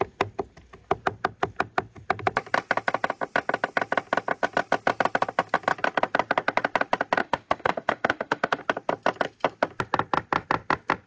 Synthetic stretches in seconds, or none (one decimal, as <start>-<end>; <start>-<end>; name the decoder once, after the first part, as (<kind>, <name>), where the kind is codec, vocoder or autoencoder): 7.2-8.6 (autoencoder, DAC-VAE)